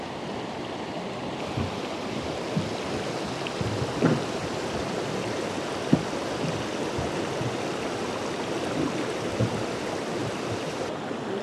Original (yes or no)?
yes